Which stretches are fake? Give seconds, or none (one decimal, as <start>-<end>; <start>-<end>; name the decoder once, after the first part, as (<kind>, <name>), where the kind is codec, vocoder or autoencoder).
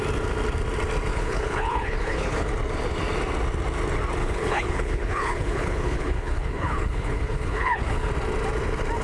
1.1-2.5 (codec, HILCodec); 4.2-8.1